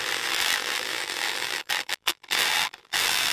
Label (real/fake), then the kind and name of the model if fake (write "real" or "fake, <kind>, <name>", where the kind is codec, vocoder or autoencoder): fake, vocoder, BigVGAN v2